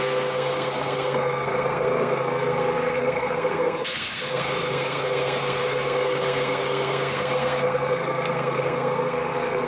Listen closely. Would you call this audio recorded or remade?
remade